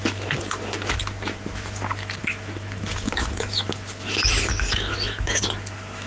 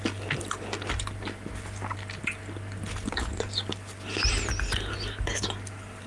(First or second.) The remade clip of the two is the first